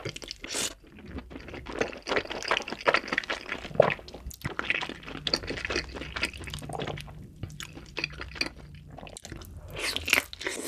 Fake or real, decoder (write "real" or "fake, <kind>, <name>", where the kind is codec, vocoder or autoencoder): real